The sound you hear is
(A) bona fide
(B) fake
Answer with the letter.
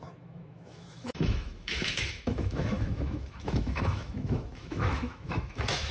B